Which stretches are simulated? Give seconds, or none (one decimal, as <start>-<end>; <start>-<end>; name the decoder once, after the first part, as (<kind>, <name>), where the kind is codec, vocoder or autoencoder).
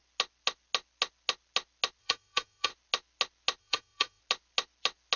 2.0-2.7 (autoencoder, DAC-VAE); 3.6-4.2